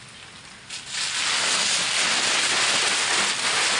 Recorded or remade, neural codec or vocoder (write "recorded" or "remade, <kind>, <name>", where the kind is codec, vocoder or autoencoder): recorded